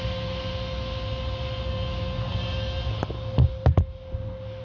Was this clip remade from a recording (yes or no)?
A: no